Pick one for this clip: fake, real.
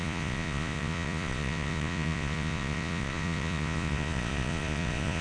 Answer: fake